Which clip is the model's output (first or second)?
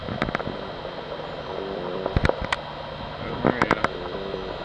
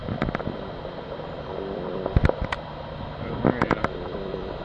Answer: second